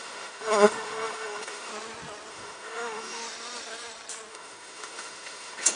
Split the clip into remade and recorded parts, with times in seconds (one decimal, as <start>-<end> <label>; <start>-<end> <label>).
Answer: 0.0-1.7 remade; 1.7-2.3 recorded; 2.3-3.2 remade; 3.2-4.3 recorded; 4.3-5.8 remade